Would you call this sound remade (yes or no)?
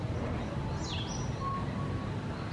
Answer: no